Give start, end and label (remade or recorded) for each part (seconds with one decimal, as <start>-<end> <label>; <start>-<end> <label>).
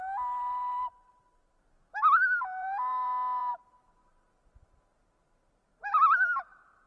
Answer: 0.0-2.6 recorded; 2.6-3.5 remade; 3.5-5.7 recorded; 5.7-6.9 remade